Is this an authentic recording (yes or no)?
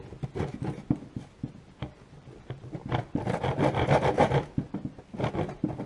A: no